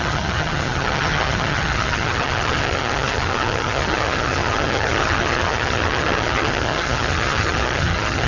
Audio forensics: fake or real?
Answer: fake